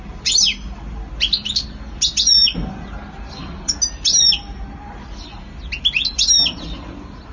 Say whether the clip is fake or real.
real